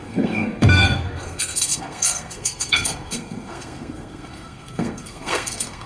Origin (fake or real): fake